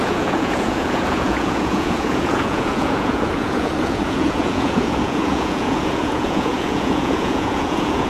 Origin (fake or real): fake